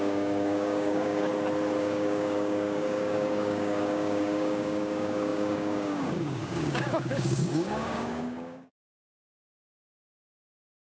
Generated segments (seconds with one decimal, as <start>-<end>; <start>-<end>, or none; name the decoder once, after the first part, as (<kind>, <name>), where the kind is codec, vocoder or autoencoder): 0.0-1.3 (codec, DAC); 1.8-10.9